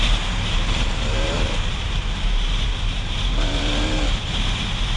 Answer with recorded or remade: remade